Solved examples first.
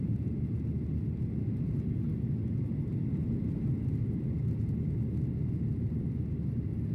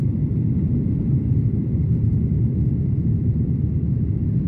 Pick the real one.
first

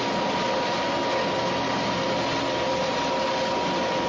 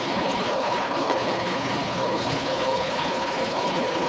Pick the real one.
first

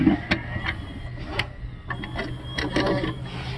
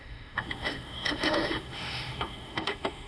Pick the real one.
first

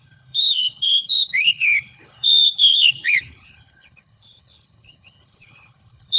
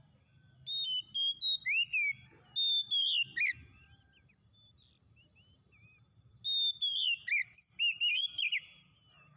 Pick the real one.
second